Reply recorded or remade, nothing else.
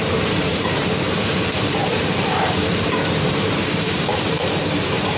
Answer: remade